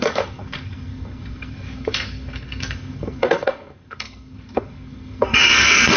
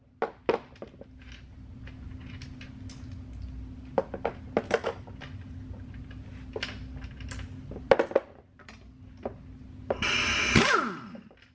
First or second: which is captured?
second